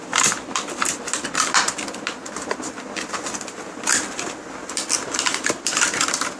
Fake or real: real